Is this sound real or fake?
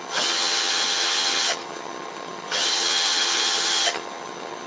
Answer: fake